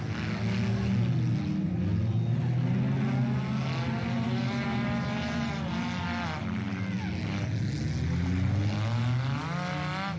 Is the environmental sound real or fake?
real